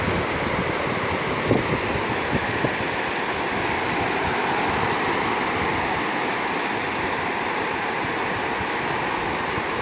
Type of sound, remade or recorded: recorded